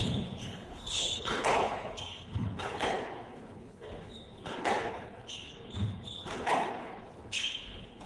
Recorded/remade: remade